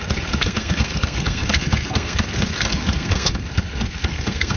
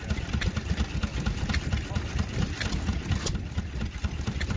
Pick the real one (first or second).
second